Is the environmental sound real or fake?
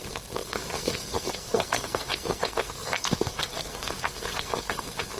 fake